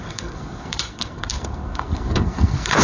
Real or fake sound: fake